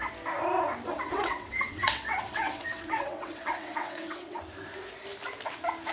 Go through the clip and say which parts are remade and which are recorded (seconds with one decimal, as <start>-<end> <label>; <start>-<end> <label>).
0.0-0.9 recorded; 0.9-4.4 remade; 4.4-5.9 recorded